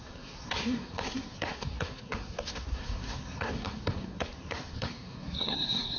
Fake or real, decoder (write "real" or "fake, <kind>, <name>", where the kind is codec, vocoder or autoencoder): fake, codec, SNAC